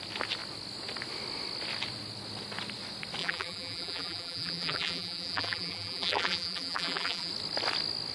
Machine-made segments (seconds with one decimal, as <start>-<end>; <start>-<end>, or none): 3.2-7.3

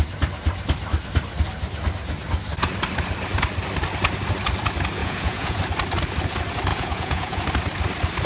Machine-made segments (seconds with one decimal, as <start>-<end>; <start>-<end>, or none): 5.0-5.6; 6.7-7.4

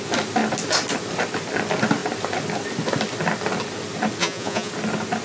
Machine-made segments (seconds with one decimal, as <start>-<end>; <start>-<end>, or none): 4.2-4.7

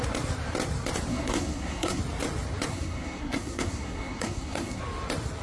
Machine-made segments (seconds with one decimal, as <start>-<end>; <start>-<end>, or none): 1.1-2.0; 2.7-4.8

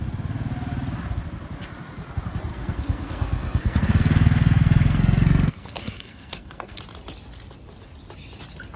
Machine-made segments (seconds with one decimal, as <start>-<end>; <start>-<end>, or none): 2.5-6.8